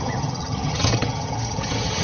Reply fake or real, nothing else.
fake